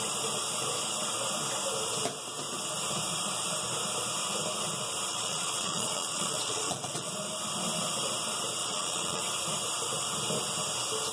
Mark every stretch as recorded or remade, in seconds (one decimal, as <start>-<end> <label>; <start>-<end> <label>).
0.0-5.1 recorded; 5.1-7.1 remade; 7.1-8.6 recorded; 8.6-9.2 remade; 9.2-11.1 recorded